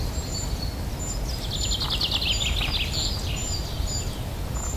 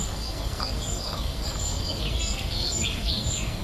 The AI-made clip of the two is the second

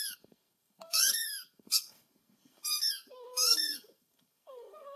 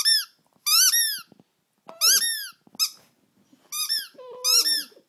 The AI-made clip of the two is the first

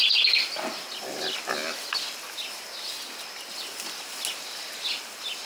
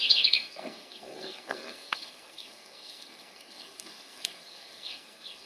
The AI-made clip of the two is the second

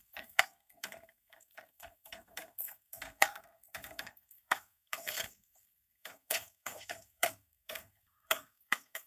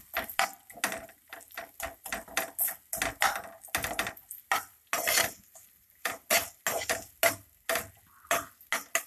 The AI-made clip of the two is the first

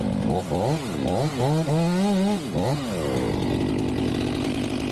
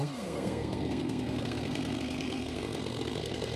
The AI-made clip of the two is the second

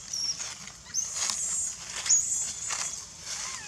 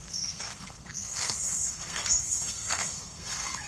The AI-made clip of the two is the second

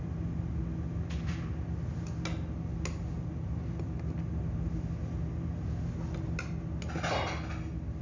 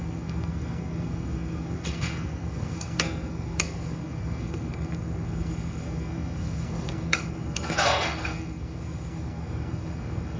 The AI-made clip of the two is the second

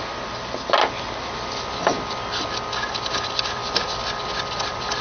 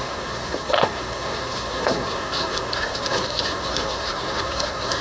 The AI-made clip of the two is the second